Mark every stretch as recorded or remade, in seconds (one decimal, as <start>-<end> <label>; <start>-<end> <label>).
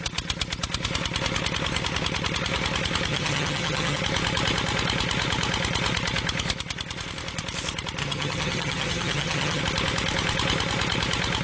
0.0-3.1 recorded; 3.1-4.0 remade; 4.0-8.0 recorded; 8.0-9.6 remade; 9.6-11.4 recorded